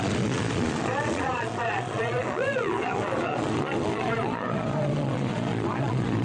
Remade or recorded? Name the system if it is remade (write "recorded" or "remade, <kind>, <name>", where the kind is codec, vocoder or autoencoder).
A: remade, vocoder, Vocos